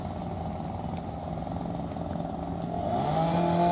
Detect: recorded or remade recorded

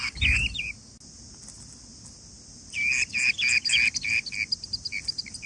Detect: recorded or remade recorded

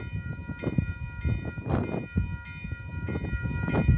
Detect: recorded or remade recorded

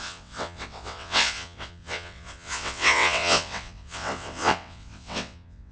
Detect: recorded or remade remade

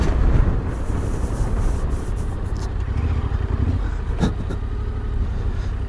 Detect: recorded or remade recorded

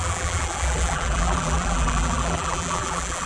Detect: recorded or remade remade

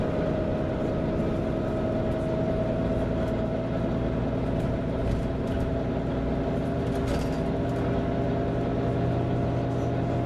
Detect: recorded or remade recorded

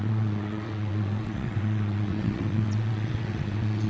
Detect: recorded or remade remade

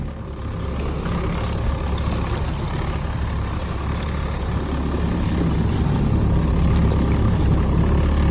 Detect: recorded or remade recorded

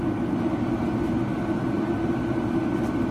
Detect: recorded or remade recorded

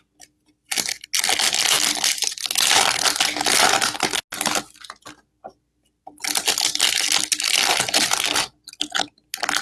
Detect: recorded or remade recorded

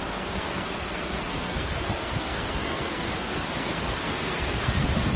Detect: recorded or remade remade